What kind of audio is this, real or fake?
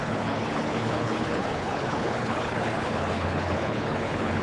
fake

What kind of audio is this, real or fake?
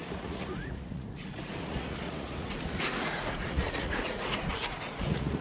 fake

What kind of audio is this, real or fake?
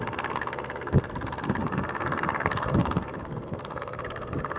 fake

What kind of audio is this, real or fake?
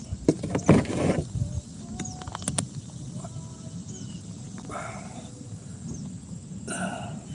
real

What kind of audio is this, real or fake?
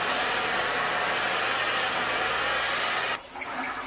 real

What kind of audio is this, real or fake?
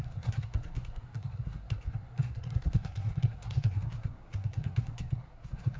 fake